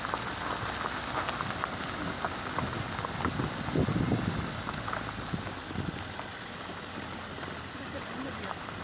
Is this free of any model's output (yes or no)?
yes